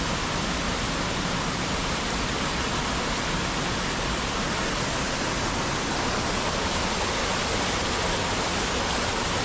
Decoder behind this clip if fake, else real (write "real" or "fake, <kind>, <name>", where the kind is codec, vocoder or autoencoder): real